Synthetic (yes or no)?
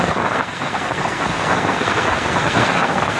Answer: yes